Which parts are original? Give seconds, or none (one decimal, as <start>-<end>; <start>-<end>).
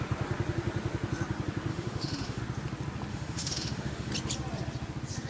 0.0-1.7; 2.4-3.1; 4.1-5.3